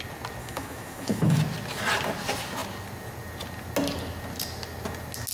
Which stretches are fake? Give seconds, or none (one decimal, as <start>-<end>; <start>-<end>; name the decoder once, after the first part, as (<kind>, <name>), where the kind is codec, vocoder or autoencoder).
0.4-1.4 (autoencoder, DAC-VAE)